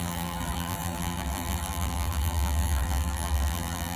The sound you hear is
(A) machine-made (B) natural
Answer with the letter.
A